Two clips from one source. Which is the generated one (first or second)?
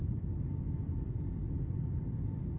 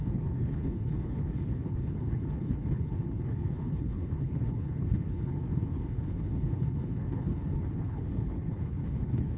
second